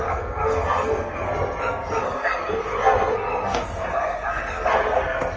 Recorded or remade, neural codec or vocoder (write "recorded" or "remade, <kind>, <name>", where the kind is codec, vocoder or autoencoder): remade, codec, SNAC